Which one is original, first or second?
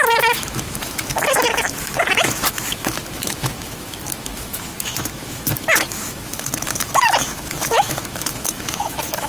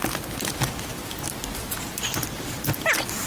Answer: second